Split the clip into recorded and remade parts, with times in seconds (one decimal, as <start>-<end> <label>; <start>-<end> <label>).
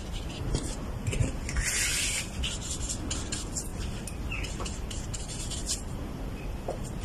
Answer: 0.0-3.7 recorded; 3.7-4.6 remade; 4.6-5.6 recorded; 5.6-6.2 remade; 6.2-7.0 recorded